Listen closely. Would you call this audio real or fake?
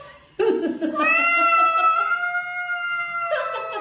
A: real